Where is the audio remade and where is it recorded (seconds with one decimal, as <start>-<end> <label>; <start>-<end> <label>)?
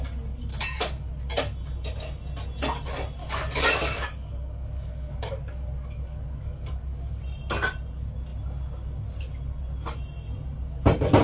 0.0-0.5 recorded; 0.5-1.1 remade; 1.1-3.2 recorded; 3.2-7.1 remade; 7.1-11.2 recorded